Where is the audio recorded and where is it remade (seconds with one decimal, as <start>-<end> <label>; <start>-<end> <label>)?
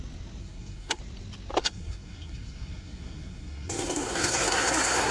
0.0-0.4 recorded; 0.4-1.0 remade; 1.0-1.6 recorded; 1.6-5.1 remade